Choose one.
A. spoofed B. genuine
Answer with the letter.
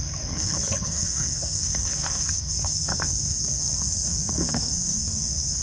A